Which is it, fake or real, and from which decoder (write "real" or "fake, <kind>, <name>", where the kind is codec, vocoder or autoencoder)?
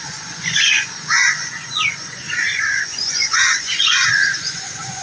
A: fake, vocoder, Vocos